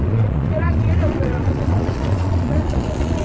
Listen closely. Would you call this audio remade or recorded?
remade